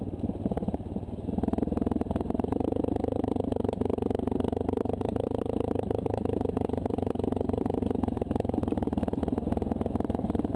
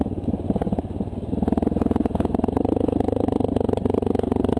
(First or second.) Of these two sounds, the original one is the second